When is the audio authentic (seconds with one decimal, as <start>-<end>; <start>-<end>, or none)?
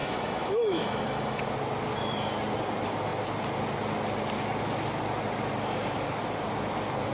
1.4-7.1